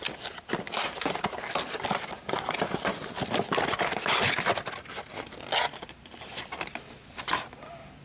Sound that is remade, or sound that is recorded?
recorded